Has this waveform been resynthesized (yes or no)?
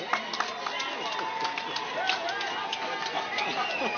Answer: no